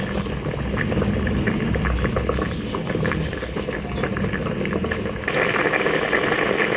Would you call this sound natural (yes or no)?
yes